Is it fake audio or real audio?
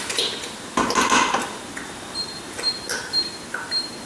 real